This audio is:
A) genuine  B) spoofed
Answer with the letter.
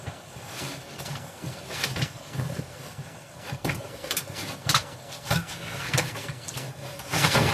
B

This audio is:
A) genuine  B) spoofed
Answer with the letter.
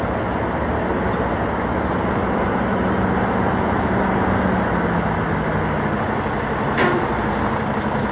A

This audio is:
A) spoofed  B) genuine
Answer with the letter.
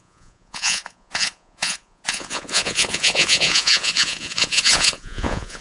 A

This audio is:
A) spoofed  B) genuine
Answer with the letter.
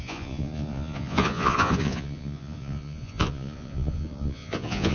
A